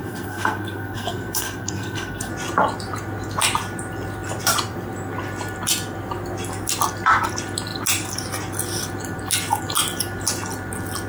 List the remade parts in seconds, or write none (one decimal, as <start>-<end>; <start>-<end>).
0.0-2.3